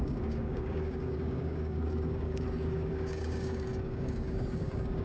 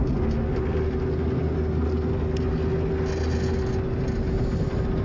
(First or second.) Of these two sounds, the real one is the second